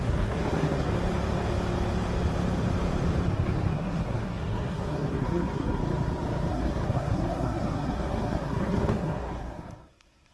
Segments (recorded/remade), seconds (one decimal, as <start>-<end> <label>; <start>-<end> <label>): 0.0-0.9 remade; 0.9-3.7 recorded; 3.7-5.8 remade; 5.8-6.5 recorded; 6.5-10.3 remade